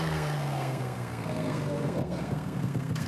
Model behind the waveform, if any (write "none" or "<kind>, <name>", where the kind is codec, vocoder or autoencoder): codec, SNAC